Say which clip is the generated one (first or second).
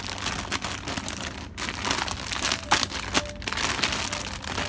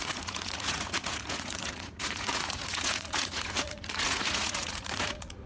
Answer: second